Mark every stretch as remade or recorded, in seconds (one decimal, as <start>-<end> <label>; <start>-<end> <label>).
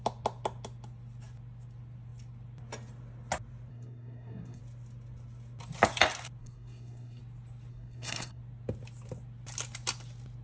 0.0-3.7 recorded; 3.7-4.6 remade; 4.6-6.4 recorded; 6.4-7.2 remade; 7.2-7.7 recorded; 7.7-8.4 remade; 8.4-10.4 recorded